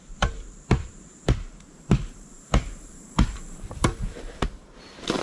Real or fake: fake